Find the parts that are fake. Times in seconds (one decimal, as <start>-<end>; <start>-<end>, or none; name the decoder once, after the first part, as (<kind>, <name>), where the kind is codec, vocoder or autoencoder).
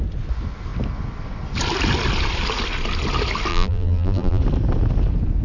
3.5-4.4 (vocoder, BigVGAN v2)